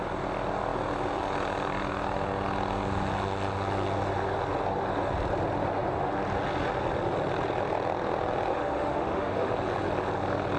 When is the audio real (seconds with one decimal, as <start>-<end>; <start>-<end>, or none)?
0.0-8.5; 9.5-10.6